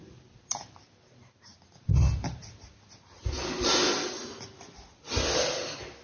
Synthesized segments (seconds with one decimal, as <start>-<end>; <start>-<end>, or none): none